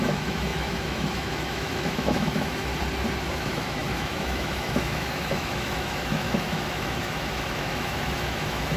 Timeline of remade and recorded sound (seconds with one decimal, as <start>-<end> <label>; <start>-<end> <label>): 0.0-2.7 remade; 2.7-3.3 recorded; 3.3-8.8 remade